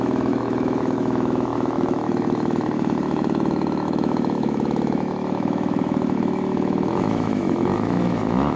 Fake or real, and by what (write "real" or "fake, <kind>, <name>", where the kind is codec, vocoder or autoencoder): fake, autoencoder, DAC-VAE